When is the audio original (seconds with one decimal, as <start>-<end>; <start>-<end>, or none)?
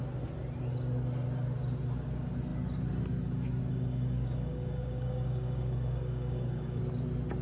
0.0-3.7; 6.8-7.4